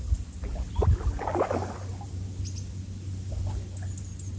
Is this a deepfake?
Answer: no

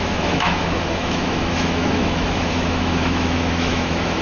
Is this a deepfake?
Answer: yes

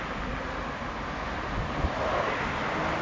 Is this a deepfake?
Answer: no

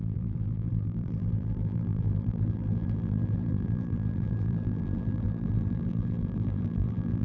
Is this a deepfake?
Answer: yes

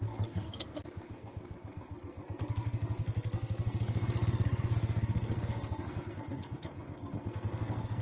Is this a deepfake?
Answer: yes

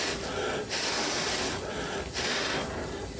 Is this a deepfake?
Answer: no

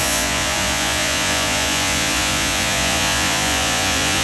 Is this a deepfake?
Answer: yes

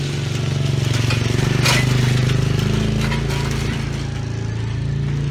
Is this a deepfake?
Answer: no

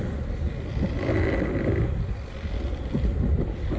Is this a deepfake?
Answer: no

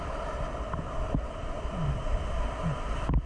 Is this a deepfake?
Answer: no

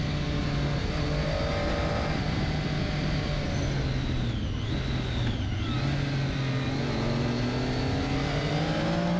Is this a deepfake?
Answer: no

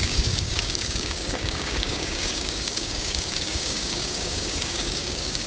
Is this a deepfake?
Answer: yes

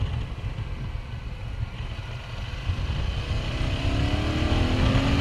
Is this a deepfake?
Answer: no